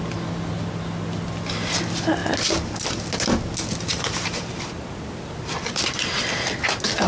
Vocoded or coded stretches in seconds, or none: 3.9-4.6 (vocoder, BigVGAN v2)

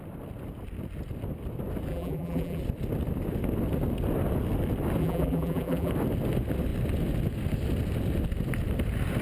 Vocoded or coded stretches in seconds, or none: 1.9-2.6 (vocoder, BigVGAN v2); 5.0-5.9

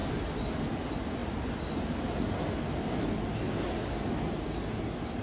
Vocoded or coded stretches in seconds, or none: none

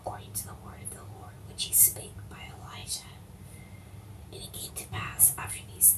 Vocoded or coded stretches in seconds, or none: none

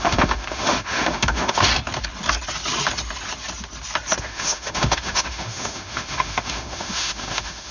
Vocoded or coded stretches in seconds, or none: 0.0-1.7 (autoencoder, DAC-VAE); 4.2-7.7

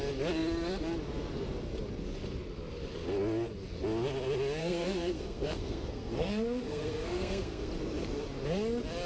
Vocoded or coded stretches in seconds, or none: 4.6-7.7 (codec, SNAC)

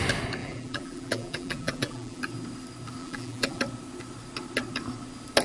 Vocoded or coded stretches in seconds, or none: 0.4-2.2 (vocoder, BigVGAN v2); 3.0-3.6

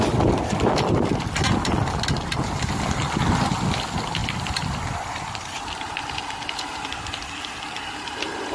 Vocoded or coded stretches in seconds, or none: 4.2-7.0 (vocoder, BigVGAN v2)